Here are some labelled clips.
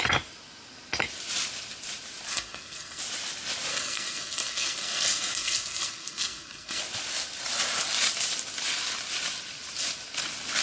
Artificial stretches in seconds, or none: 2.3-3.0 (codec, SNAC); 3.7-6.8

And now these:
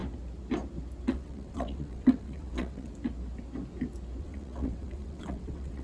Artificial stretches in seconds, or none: 1.1-2.9 (vocoder, WaveNeXt); 4.2-5.8

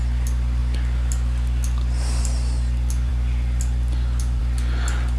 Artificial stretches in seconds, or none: none

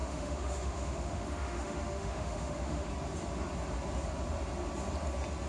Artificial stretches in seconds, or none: 0.0-2.9 (autoencoder, DAC-VAE)

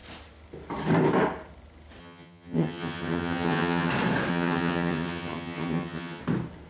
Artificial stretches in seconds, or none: 2.0-3.9 (vocoder, HiFi-GAN); 4.3-6.2

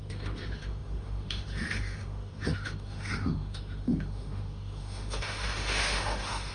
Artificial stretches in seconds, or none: 0.0-6.5 (autoencoder, DAC-VAE)

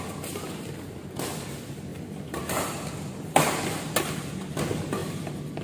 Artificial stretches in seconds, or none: 1.9-2.4 (vocoder, BigVGAN v2)